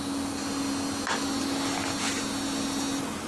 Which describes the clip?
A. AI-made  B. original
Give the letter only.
B